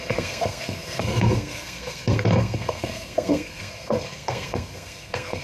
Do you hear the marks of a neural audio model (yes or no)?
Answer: yes